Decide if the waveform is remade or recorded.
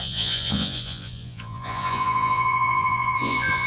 remade